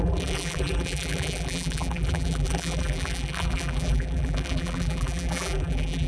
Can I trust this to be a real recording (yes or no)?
no